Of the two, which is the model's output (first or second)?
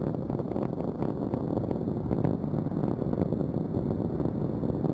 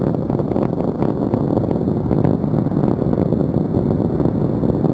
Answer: first